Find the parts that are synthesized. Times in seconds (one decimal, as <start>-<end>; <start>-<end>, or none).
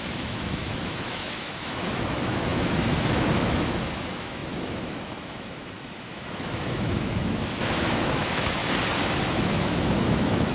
0.0-8.6; 9.2-10.5